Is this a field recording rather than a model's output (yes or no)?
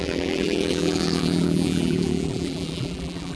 no